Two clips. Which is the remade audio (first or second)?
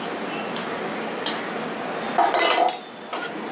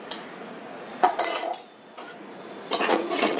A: second